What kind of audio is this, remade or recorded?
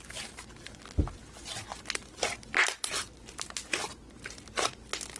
recorded